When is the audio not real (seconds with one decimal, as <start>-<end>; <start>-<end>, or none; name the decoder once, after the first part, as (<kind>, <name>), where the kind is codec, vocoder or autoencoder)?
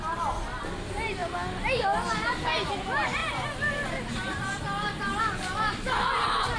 none